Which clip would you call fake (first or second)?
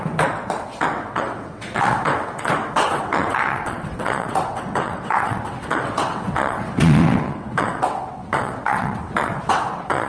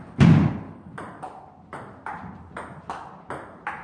first